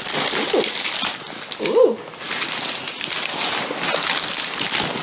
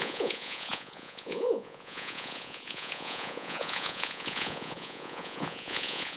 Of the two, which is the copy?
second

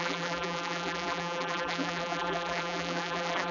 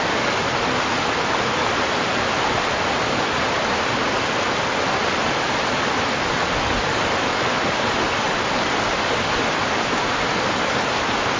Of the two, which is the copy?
first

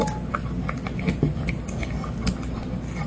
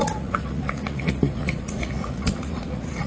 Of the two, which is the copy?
second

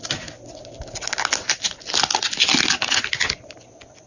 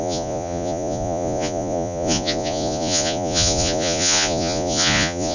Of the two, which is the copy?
second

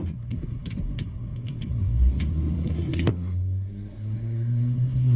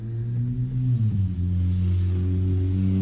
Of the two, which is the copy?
first